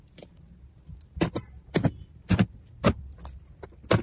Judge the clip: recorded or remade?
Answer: recorded